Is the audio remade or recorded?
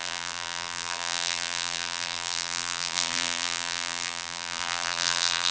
remade